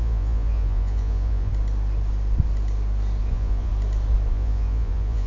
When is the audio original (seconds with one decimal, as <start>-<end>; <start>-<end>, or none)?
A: 1.5-3.3; 3.7-4.3